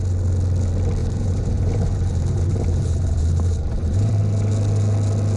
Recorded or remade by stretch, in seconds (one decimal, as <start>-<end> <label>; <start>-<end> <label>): 0.0-1.0 recorded; 1.0-4.2 remade; 4.2-5.4 recorded